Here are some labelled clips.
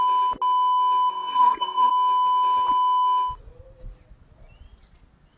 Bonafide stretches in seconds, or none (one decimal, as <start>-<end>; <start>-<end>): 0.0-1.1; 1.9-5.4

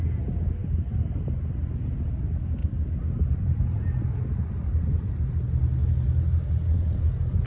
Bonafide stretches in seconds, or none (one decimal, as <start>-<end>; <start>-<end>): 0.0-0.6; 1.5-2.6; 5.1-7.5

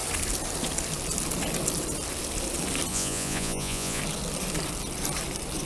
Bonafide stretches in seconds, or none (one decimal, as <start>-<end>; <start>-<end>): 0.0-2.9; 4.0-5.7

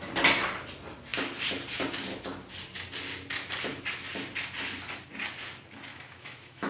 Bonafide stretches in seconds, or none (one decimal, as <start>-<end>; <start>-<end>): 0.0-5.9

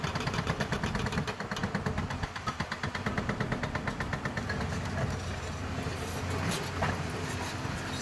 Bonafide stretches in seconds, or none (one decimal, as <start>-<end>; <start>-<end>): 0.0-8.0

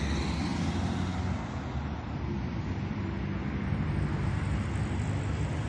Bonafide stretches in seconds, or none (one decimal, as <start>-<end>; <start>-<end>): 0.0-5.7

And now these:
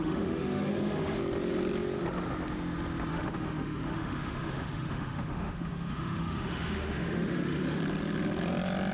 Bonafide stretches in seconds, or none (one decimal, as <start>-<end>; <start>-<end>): 1.2-3.1; 7.8-8.9